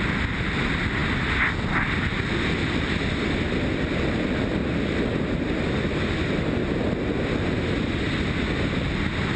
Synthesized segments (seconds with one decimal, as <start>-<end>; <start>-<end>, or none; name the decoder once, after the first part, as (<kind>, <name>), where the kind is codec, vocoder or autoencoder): none